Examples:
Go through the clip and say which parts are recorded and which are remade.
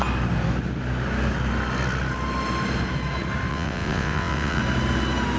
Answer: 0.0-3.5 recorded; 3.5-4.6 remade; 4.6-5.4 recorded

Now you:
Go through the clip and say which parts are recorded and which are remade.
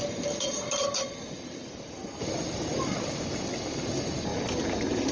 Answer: 0.0-5.1 recorded